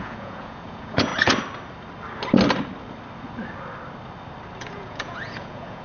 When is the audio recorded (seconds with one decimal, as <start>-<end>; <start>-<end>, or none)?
1.1-4.6